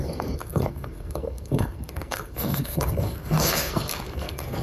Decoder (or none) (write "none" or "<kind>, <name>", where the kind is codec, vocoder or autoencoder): codec, SNAC